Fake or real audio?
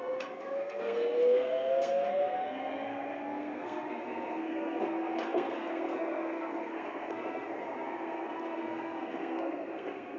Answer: fake